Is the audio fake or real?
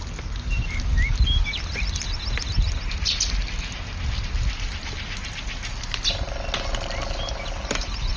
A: real